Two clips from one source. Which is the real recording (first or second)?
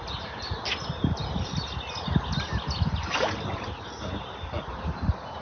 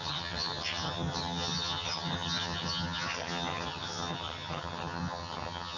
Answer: first